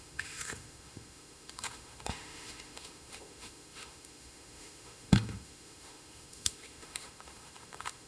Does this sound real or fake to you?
fake